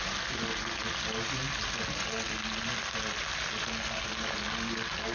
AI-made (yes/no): no